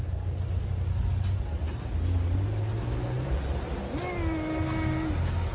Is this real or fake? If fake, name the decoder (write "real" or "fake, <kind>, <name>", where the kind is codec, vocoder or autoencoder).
real